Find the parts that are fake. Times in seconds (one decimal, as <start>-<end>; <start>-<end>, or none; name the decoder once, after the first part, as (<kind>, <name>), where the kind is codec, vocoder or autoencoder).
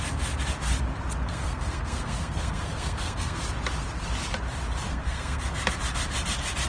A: 1.3-3.4 (codec, SNAC); 4.9-5.4